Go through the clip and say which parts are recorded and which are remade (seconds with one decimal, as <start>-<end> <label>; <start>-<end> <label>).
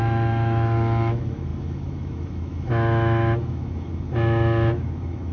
0.0-5.3 remade